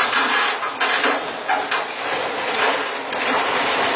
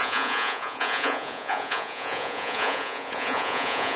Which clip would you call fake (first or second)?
second